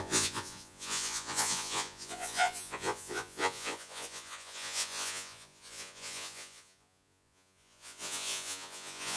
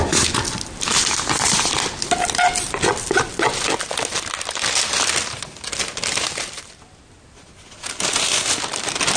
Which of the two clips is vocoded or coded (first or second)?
first